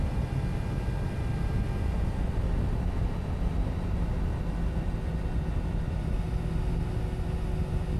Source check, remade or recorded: recorded